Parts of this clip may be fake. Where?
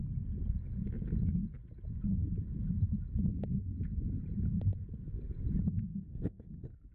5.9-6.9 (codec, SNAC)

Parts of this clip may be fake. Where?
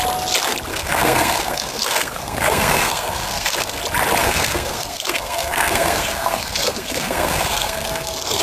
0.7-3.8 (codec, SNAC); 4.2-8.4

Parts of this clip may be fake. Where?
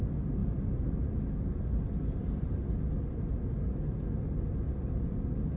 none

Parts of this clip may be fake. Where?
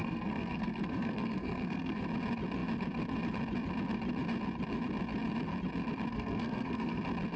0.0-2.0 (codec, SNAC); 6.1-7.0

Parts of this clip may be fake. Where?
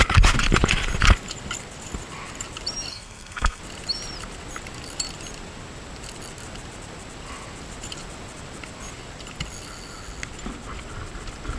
2.9-3.6 (codec, SNAC)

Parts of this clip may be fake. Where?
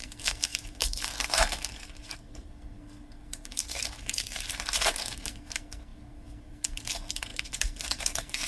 0.0-8.5 (codec, SNAC)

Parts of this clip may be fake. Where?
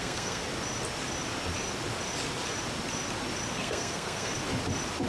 0.0-0.4 (codec, SNAC); 3.5-4.3